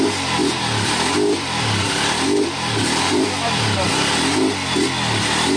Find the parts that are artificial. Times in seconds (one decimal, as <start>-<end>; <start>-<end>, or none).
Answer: 0.4-3.8